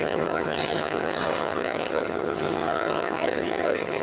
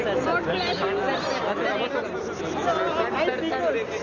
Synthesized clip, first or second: first